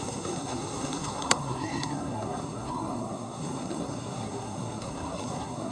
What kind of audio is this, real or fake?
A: fake